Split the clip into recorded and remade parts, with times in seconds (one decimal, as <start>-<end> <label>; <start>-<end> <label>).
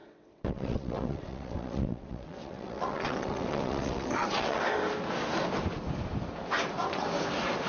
0.0-4.6 remade; 4.6-7.7 recorded